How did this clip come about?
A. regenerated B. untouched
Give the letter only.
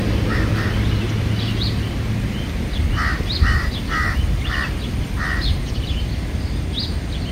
B